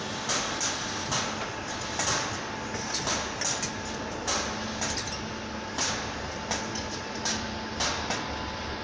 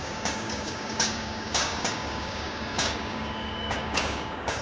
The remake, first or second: second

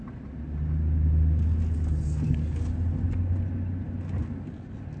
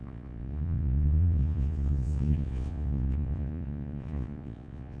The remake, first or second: second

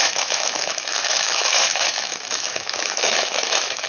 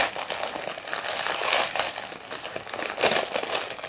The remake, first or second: first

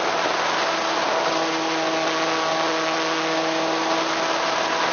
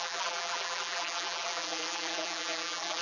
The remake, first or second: second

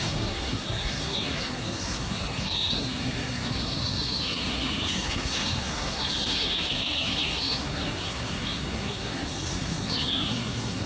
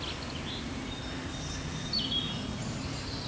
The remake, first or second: first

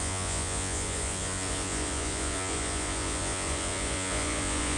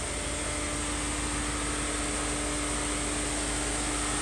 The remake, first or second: first